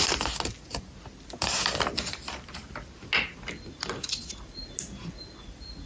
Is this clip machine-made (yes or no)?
no